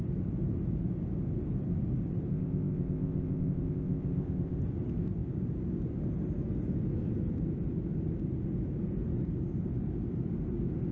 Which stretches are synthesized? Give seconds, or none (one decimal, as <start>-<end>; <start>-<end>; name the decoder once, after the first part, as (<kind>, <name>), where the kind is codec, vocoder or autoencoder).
2.3-4.6 (codec, ZipCodec)